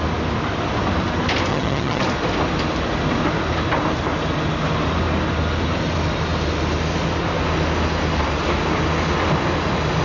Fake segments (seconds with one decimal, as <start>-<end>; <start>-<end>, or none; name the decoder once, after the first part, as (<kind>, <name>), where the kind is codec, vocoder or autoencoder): 1.5-2.0 (vocoder, HiFi-GAN)